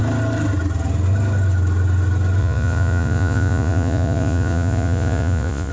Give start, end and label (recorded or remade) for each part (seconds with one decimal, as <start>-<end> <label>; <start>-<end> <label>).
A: 0.0-2.4 recorded; 2.4-5.7 remade